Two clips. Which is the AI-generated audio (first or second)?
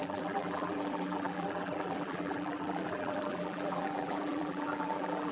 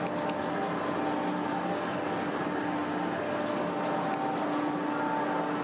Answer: first